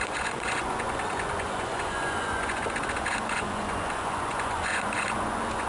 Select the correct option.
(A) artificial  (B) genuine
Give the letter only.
A